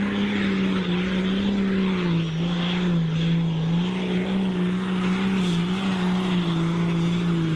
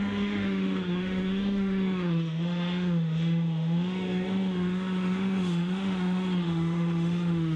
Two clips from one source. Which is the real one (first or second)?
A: first